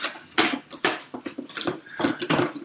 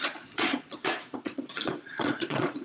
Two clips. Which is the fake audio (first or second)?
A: second